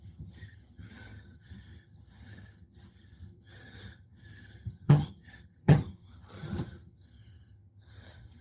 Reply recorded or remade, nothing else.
remade